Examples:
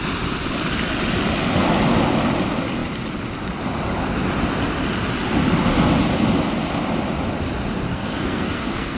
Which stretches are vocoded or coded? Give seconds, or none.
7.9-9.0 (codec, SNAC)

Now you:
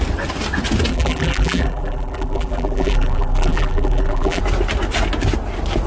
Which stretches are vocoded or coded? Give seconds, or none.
0.9-4.4 (vocoder, BigVGAN v2)

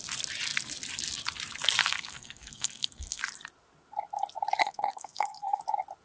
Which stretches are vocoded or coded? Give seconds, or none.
1.8-3.2 (codec, SNAC); 4.6-5.6